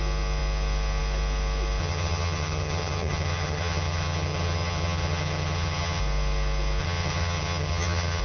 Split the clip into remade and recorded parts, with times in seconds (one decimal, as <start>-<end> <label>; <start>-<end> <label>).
0.0-1.8 recorded; 1.8-6.0 remade; 6.0-6.8 recorded; 6.8-8.2 remade